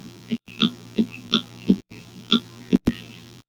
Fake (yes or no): yes